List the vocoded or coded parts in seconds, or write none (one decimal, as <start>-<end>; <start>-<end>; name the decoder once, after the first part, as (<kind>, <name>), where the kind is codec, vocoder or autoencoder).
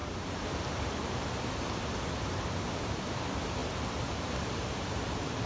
0.0-5.5 (vocoder, BigVGAN v2)